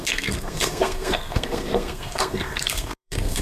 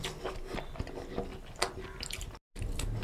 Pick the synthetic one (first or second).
first